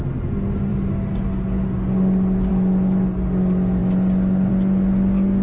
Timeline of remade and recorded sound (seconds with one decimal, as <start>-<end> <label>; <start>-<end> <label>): 0.0-5.4 recorded